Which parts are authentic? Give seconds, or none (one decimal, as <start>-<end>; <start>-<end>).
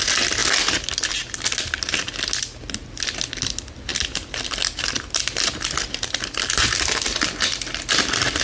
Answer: 0.0-8.4